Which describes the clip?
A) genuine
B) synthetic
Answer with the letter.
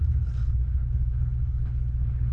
B